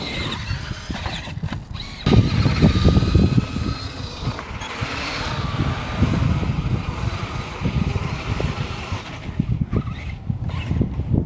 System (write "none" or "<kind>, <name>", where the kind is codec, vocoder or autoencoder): none